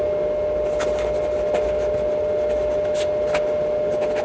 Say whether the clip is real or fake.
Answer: real